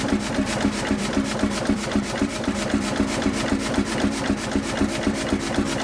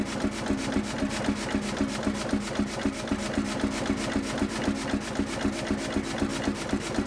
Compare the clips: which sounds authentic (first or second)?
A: second